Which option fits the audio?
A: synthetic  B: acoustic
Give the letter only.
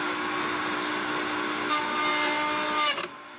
B